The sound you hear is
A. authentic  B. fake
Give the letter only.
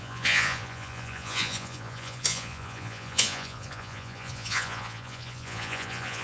B